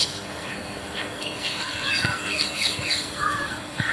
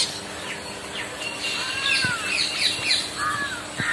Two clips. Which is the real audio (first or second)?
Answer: second